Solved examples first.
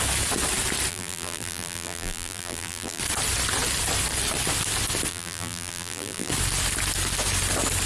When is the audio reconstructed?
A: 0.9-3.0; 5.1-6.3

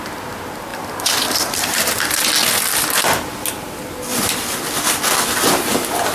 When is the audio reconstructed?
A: 0.7-2.2; 4.1-5.1

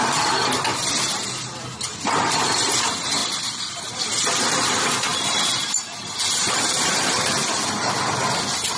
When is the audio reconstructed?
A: 0.7-1.6; 3.2-3.8; 5.1-7.7

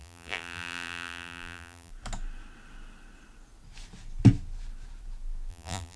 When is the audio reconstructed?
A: 0.0-1.9; 5.5-6.0

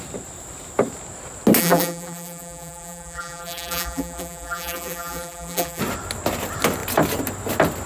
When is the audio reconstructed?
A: 1.6-5.8

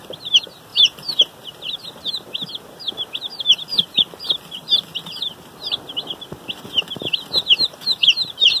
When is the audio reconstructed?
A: none

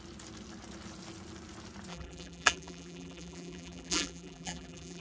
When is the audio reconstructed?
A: 1.9-5.0

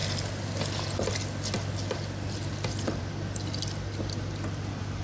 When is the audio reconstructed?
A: none